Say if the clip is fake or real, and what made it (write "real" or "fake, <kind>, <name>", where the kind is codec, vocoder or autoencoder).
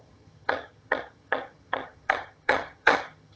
fake, vocoder, HiFi-GAN